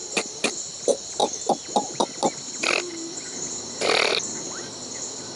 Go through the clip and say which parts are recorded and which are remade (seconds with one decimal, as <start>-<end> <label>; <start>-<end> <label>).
0.0-5.4 recorded